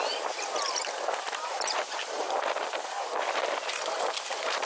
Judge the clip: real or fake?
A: fake